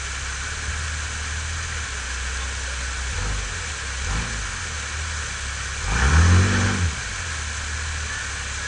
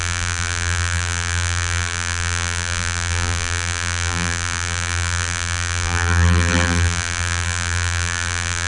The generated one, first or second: second